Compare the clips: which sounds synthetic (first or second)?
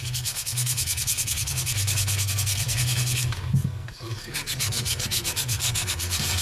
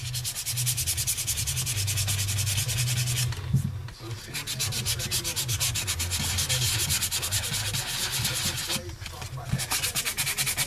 first